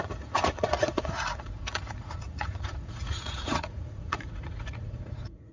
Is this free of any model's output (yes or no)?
no